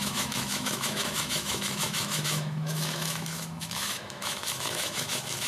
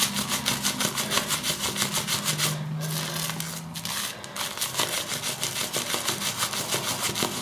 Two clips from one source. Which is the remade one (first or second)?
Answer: first